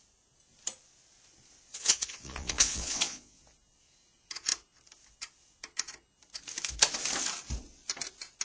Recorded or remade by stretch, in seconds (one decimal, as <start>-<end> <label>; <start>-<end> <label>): 0.0-1.7 recorded; 1.7-3.4 remade; 3.4-8.4 recorded